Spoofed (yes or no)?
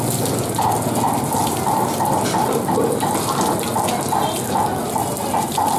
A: no